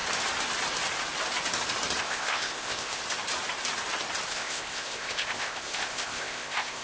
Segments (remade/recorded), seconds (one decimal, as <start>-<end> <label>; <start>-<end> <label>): 0.0-2.0 recorded; 2.0-3.0 remade; 3.0-4.3 recorded; 4.3-6.8 remade